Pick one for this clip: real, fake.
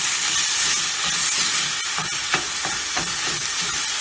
real